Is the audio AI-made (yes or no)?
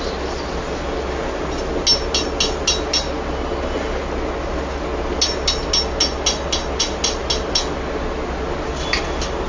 no